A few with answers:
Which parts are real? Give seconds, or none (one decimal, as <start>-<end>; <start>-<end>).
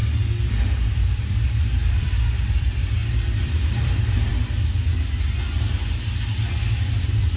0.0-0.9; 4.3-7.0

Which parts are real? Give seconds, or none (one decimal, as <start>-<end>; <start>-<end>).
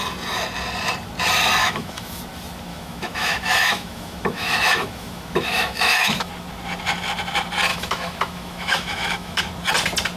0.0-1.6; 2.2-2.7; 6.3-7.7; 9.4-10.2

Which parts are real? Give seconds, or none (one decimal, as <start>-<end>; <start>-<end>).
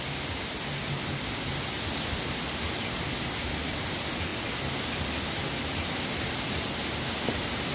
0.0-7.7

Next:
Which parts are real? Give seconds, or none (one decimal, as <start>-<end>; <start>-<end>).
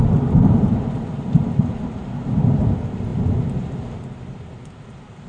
0.0-5.3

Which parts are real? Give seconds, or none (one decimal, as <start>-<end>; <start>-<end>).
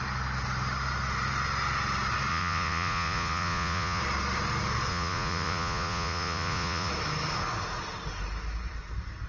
0.0-2.3; 4.0-4.9; 6.9-9.3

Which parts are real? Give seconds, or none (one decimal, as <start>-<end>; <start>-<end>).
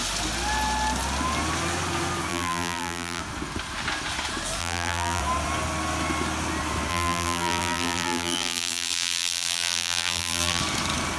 0.0-2.3; 3.2-4.6; 5.2-6.9; 10.6-11.2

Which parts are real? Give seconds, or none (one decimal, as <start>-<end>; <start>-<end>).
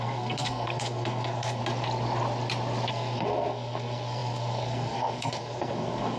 1.6-2.9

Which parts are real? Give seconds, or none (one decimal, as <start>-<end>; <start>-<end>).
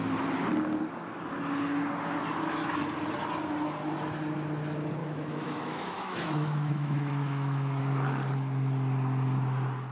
0.0-5.0; 7.8-9.9